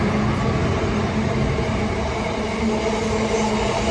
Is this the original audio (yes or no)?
yes